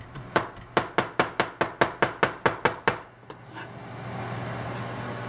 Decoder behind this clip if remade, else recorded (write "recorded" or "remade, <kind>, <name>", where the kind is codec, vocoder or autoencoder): recorded